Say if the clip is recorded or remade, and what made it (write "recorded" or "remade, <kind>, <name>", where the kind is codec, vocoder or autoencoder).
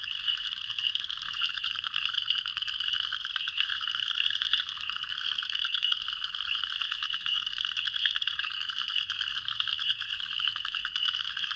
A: remade, codec, SNAC